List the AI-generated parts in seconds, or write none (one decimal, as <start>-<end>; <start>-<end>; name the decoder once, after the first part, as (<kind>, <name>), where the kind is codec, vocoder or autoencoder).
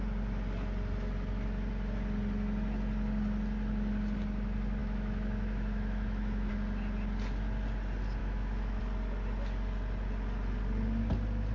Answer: 4.8-6.5 (autoencoder, DAC-VAE); 8.2-8.8